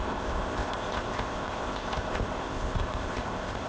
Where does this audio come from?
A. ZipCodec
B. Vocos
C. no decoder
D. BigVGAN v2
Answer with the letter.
A